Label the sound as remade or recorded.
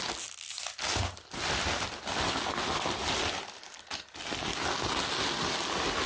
recorded